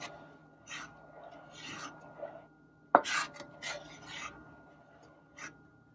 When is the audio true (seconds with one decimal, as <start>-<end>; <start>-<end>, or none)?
0.0-5.9